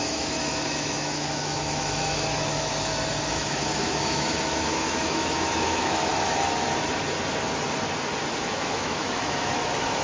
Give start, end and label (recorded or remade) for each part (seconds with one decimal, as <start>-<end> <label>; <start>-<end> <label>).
0.0-2.7 remade; 2.7-3.3 recorded; 3.3-6.1 remade; 6.1-8.4 recorded; 8.4-10.0 remade